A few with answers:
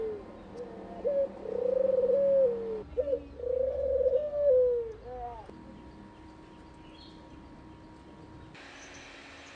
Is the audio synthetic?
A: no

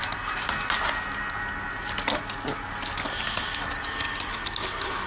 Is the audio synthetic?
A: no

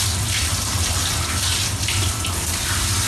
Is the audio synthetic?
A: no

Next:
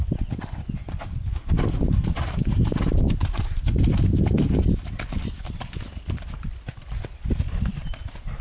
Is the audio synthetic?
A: no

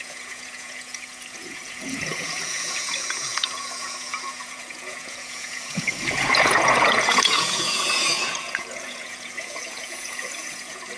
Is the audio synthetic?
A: yes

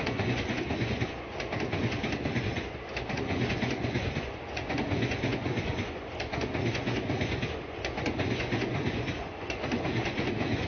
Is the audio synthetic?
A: yes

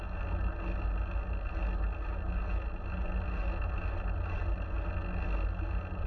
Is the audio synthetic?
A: no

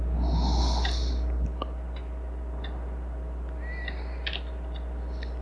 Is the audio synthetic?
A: no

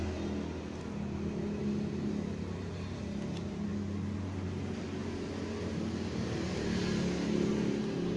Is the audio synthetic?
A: no